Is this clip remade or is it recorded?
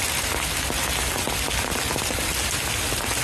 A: recorded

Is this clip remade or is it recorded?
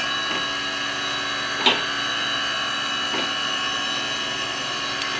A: recorded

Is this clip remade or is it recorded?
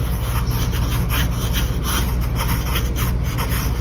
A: recorded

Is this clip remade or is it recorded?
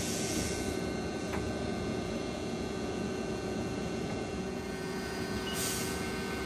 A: remade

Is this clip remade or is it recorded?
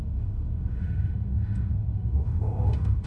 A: remade